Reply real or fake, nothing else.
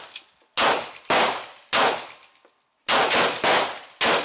real